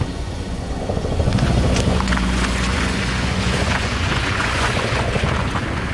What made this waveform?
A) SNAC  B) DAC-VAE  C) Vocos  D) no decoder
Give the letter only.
C